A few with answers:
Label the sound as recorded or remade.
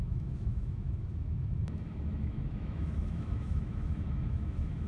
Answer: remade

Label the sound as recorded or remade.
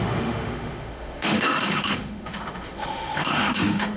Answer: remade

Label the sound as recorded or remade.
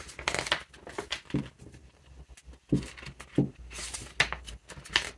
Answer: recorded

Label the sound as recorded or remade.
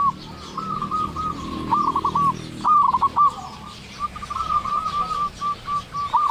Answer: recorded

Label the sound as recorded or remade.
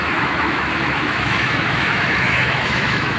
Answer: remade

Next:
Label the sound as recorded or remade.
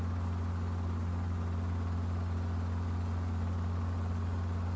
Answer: recorded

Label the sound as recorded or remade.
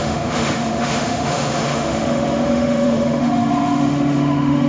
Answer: remade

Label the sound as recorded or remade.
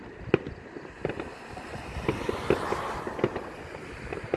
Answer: recorded